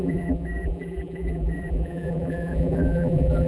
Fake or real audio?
fake